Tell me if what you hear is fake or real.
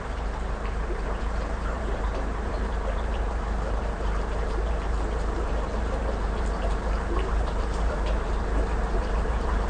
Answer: fake